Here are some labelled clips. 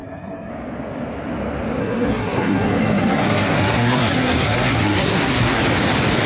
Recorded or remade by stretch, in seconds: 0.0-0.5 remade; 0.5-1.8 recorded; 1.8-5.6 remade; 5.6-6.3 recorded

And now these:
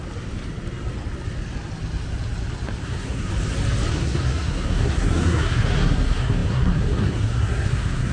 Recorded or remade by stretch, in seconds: 0.0-2.8 recorded; 2.8-3.3 remade; 3.3-3.9 recorded; 3.9-8.1 remade

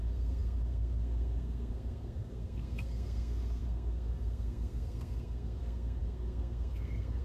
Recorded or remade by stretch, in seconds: 0.0-7.2 remade

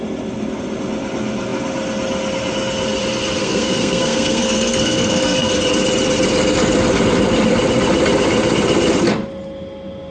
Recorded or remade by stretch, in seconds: 0.0-3.4 recorded; 3.4-5.5 remade; 5.5-10.1 recorded

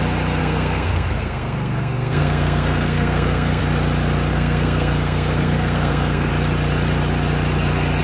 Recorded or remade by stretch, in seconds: 0.0-0.4 recorded; 0.4-3.6 remade; 3.6-4.3 recorded; 4.3-6.3 remade; 6.3-8.0 recorded

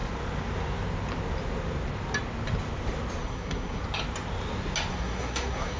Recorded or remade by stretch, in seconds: 0.0-3.2 recorded; 3.2-3.8 remade; 3.8-4.9 recorded; 4.9-5.8 remade